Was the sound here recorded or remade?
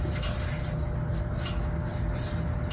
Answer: recorded